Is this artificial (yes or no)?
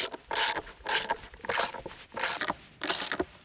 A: no